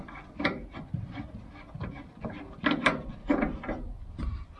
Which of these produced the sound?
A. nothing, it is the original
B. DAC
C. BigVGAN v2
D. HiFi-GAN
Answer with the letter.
A